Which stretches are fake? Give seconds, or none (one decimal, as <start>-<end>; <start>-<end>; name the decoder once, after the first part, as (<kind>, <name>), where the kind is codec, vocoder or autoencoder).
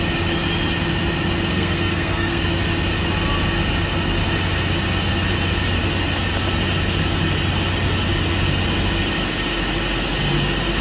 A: 1.5-2.4 (codec, SNAC)